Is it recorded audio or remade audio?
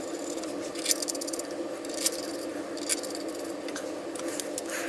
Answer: recorded